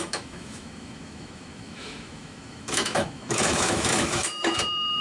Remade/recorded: remade